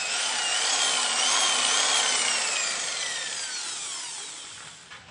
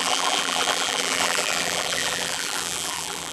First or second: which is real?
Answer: first